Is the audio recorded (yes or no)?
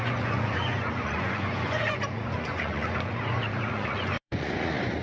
no